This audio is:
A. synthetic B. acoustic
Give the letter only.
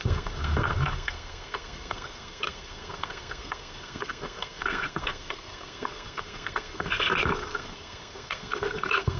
A